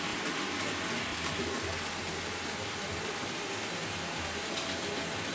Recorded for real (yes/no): yes